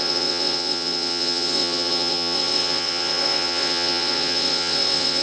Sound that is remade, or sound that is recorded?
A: remade